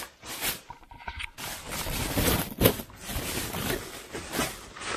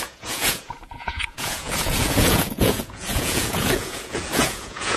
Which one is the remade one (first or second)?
second